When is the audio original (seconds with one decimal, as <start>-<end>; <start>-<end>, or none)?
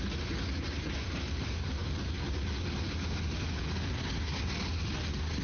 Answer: 0.0-5.4